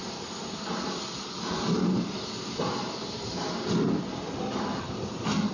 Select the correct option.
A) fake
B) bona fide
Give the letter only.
B